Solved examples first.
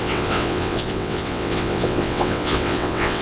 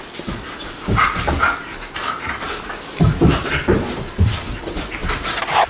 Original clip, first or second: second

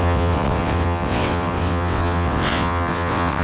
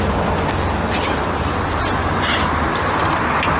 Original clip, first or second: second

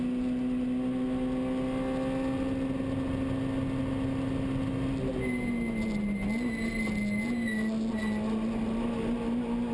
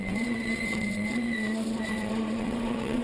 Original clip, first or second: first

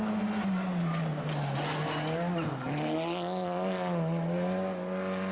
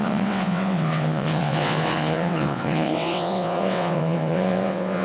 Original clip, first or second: first